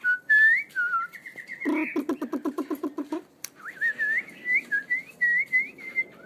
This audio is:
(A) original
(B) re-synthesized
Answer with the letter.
A